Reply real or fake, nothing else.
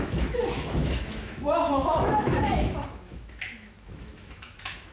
fake